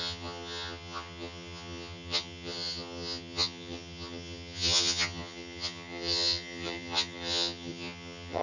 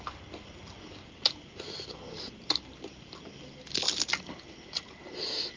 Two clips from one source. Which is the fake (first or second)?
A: first